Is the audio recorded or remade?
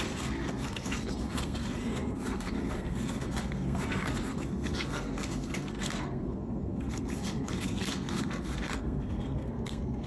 remade